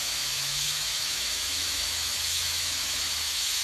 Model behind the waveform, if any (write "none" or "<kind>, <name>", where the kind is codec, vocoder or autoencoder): autoencoder, DAC-VAE